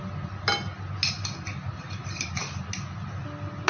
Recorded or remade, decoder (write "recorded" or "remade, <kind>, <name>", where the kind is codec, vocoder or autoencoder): recorded